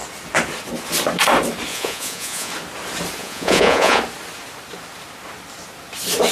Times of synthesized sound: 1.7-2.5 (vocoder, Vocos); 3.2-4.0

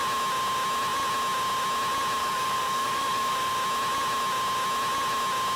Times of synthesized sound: 2.2-3.5 (codec, DAC)

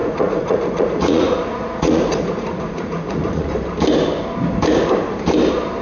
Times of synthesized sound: 0.0-3.5 (vocoder, Vocos)

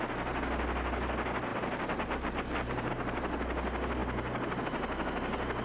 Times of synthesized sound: 1.5-2.9 (vocoder, BigVGAN v2)

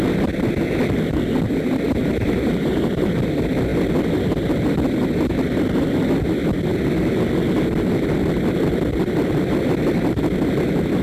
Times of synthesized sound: 2.0-3.1 (vocoder, BigVGAN v2)